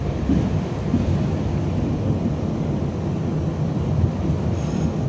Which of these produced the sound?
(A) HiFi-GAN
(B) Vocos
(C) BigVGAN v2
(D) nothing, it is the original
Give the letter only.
D